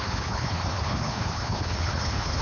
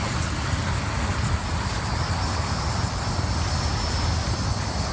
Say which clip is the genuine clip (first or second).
second